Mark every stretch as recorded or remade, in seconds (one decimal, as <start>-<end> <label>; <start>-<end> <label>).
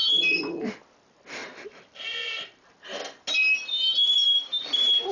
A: 0.0-0.7 remade; 0.7-1.4 recorded; 1.4-2.7 remade; 2.7-5.1 recorded